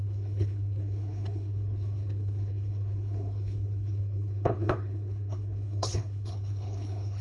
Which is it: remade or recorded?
remade